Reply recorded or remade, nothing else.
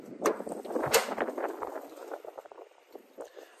recorded